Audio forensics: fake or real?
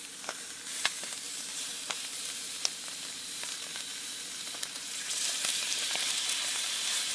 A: fake